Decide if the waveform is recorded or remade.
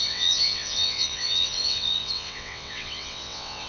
remade